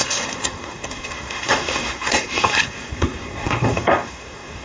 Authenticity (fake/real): fake